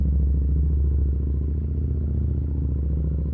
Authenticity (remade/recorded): recorded